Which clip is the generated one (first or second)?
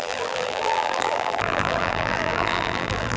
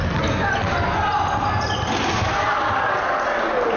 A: first